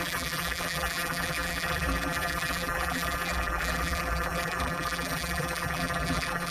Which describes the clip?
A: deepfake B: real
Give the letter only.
A